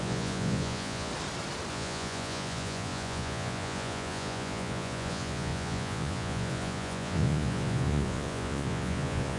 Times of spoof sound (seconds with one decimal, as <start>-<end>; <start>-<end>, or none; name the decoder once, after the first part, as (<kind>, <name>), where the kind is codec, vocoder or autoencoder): 0.0-1.1 (vocoder, Vocos); 1.7-9.4